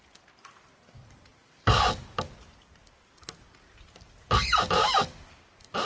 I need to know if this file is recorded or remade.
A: recorded